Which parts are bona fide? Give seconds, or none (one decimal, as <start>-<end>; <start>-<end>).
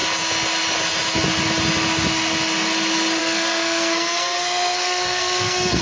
0.0-3.2